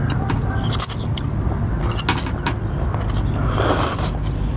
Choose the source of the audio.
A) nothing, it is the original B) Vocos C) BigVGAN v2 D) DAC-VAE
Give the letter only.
A